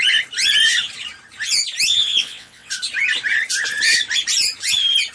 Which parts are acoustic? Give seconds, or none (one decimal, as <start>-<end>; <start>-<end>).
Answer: 0.0-1.9; 2.7-5.1